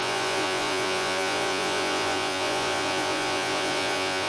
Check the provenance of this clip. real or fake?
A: fake